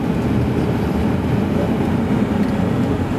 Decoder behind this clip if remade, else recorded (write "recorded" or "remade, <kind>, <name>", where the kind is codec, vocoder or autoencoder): recorded